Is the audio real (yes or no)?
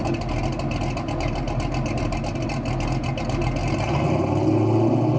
yes